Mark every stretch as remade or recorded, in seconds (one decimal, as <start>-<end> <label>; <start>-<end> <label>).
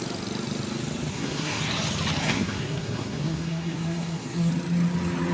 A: 0.0-1.1 recorded; 1.1-1.6 remade; 1.6-2.2 recorded; 2.2-4.5 remade; 4.5-5.3 recorded